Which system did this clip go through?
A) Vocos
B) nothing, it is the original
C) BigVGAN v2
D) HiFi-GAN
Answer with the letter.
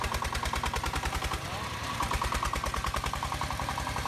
C